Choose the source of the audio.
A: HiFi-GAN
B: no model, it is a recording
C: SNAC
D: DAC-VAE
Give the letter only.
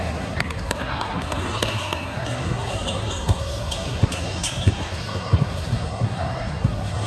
C